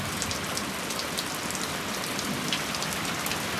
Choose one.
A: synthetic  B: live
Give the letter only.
B